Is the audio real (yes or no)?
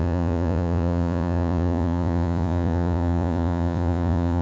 no